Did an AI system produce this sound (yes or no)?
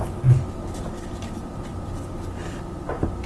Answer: no